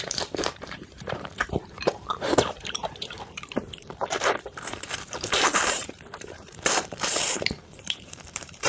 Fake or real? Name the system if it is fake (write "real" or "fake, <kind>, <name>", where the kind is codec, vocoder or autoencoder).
fake, vocoder, BigVGAN v2